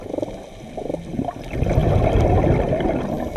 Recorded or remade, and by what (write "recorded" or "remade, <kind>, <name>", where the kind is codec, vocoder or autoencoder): recorded